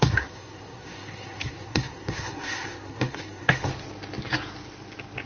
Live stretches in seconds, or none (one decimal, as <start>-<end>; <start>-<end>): 3.7-5.3